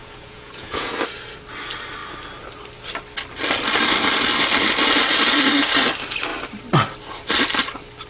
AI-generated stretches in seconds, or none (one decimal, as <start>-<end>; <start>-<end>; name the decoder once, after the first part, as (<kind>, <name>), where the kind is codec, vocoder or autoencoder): 0.0-0.9 (vocoder, Vocos)